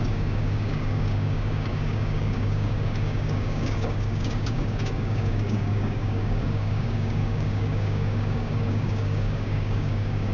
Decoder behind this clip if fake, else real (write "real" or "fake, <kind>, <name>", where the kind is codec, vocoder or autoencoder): fake, codec, DAC